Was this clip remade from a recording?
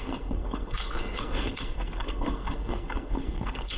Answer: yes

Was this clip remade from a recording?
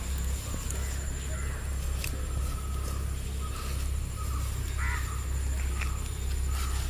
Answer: no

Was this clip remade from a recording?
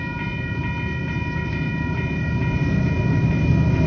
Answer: no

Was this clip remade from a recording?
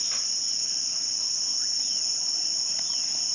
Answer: no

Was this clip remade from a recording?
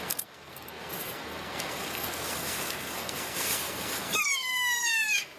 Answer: yes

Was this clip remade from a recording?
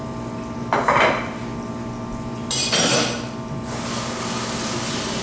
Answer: no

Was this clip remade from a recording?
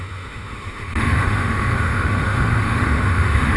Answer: yes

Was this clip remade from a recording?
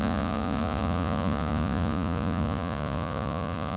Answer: yes